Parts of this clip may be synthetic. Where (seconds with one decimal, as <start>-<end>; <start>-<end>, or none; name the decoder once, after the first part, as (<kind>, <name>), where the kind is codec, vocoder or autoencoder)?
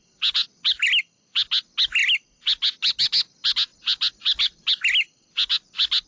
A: none